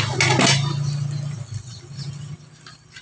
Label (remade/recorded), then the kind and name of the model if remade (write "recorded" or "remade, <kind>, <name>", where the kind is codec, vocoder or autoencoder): recorded